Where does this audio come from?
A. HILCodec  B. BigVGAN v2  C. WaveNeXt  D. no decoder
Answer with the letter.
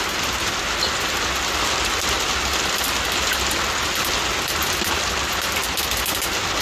D